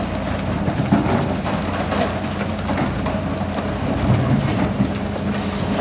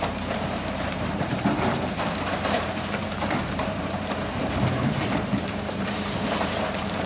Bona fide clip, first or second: first